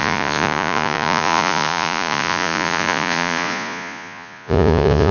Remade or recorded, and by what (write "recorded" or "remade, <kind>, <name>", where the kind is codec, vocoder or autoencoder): remade, vocoder, Vocos